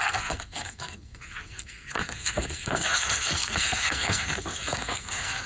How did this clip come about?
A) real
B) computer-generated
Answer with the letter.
B